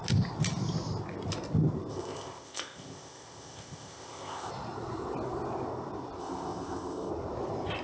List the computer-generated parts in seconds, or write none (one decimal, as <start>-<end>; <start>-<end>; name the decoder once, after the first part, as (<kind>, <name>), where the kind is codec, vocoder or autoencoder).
1.9-4.5 (codec, ZipCodec); 6.2-7.1

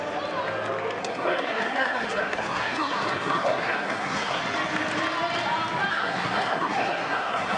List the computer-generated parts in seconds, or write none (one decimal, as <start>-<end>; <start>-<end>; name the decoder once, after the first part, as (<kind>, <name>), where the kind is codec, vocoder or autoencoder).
1.0-4.4 (codec, SNAC); 5.9-7.6

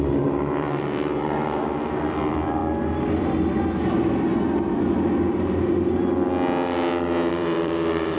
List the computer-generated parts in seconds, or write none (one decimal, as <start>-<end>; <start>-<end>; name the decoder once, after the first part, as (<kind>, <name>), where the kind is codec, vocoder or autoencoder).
0.0-2.6 (vocoder, BigVGAN v2); 3.1-4.3; 7.3-8.2

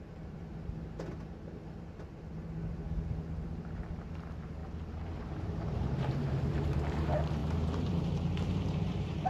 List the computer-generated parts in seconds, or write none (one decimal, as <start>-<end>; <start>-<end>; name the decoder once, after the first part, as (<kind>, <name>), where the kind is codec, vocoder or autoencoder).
0.0-0.4 (vocoder, BigVGAN v2); 3.9-4.6; 5.1-9.3

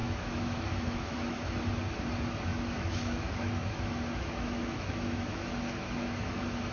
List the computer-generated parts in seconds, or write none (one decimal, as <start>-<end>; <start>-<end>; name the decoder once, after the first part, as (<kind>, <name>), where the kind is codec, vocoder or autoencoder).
0.0-1.5 (autoencoder, DAC-VAE); 2.5-6.7

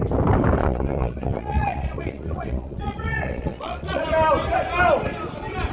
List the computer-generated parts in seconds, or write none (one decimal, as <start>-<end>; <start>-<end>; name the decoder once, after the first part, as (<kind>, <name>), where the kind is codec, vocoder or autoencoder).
0.6-4.0 (vocoder, Vocos)